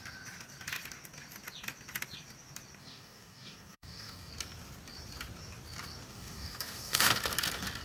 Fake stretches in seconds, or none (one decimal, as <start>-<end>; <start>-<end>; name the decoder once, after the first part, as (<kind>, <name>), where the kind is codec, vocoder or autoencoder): 2.8-4.3 (codec, DAC); 6.1-7.2

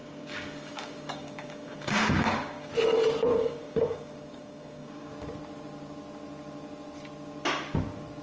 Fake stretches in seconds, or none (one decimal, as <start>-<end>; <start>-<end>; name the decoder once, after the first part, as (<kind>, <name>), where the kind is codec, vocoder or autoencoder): 0.0-2.7 (codec, DAC); 3.3-5.1

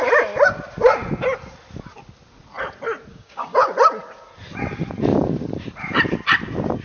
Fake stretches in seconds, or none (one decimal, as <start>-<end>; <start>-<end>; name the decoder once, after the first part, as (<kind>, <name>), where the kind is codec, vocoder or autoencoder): 3.1-3.6 (codec, DAC)

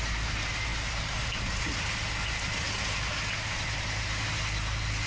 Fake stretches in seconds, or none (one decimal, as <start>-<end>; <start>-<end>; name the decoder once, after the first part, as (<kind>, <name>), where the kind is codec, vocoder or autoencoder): none

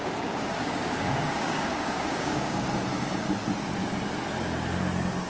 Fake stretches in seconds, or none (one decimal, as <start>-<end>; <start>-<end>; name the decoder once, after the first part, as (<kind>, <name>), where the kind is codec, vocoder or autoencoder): 0.0-2.7 (codec, DAC)

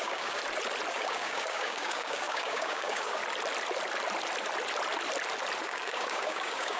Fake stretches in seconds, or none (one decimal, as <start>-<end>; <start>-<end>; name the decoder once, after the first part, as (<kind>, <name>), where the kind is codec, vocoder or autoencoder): 0.0-0.4 (codec, DAC); 0.9-3.2; 5.6-6.8

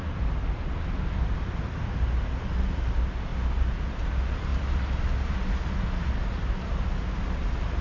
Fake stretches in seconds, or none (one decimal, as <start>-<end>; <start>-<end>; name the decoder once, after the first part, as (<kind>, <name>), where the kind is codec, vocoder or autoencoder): none